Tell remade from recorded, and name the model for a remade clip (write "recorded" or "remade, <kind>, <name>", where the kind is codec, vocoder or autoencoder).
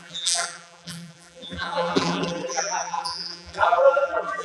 remade, vocoder, BigVGAN v2